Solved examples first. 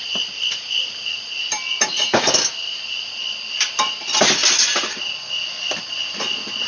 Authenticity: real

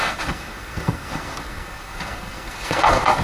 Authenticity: fake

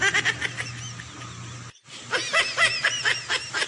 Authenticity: real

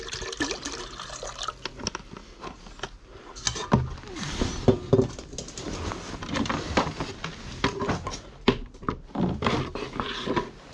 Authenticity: real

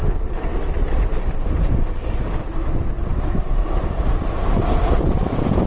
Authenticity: real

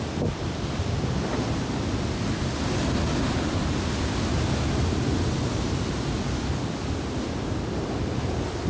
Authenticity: real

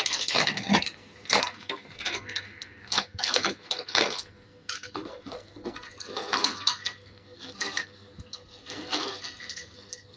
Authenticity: fake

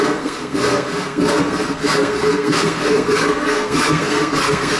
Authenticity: fake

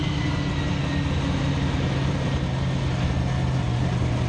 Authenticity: real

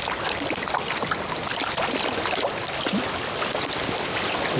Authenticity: real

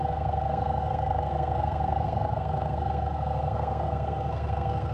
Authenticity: fake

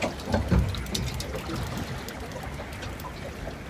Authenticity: real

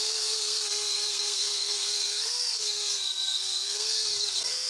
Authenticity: fake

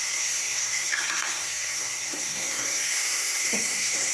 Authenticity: fake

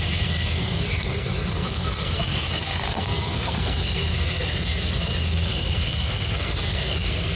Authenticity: fake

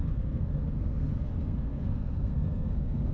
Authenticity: fake